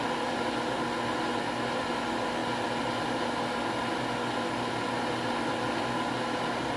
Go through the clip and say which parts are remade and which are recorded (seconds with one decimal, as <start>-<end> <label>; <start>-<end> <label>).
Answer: 0.0-6.8 recorded